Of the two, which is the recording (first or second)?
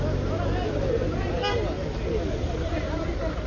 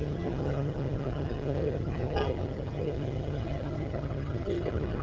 first